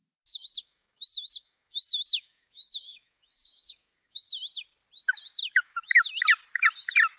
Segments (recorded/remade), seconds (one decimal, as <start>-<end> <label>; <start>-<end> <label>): 0.0-4.3 remade; 4.3-5.4 recorded; 5.4-6.2 remade; 6.2-7.2 recorded

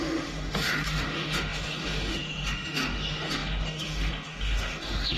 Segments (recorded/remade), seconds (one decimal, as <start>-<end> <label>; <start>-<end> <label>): 0.0-5.2 remade

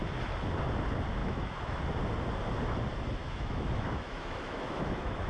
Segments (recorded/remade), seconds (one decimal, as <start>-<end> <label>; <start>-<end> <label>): 0.0-1.2 recorded; 1.2-1.8 remade; 1.8-3.2 recorded; 3.2-5.3 remade

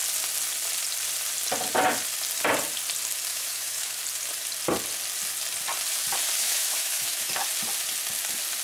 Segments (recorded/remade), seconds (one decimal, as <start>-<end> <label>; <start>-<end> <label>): 0.0-3.3 recorded; 3.3-4.0 remade; 4.0-6.4 recorded; 6.4-7.3 remade; 7.3-8.6 recorded

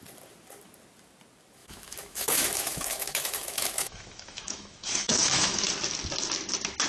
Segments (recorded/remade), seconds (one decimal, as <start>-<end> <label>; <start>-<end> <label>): 0.0-1.6 recorded; 1.6-5.7 remade; 5.7-6.9 recorded

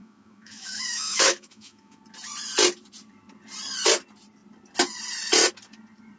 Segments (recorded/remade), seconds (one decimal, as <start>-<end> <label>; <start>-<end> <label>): 0.0-2.0 remade; 2.0-6.2 recorded

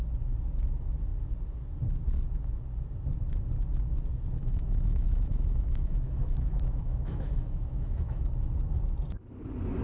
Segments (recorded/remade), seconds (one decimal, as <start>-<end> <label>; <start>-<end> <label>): 0.0-4.4 recorded; 4.4-8.3 remade; 8.3-9.8 recorded